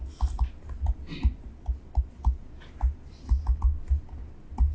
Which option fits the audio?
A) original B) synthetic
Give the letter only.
A